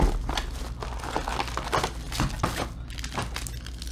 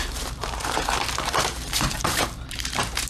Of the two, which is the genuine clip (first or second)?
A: first